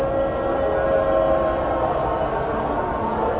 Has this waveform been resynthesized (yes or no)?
no